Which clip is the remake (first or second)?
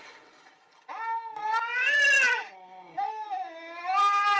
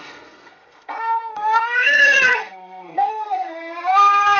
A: second